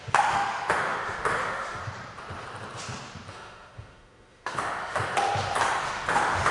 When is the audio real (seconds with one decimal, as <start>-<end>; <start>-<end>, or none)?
1.8-3.3; 5.1-5.8